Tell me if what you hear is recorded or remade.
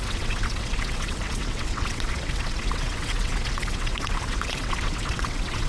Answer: remade